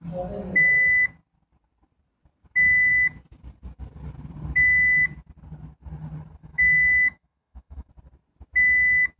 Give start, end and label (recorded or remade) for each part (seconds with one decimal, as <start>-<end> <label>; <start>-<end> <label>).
0.0-6.4 recorded; 6.4-7.9 remade; 7.9-9.2 recorded